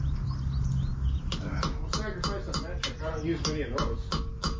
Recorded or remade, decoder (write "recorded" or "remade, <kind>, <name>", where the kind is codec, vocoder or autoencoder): recorded